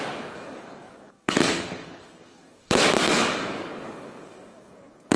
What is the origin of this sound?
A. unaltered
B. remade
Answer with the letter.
B